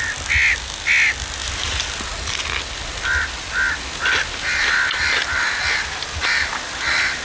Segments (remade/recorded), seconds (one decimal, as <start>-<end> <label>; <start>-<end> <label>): 0.0-7.2 recorded